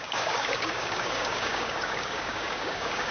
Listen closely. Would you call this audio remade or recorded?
remade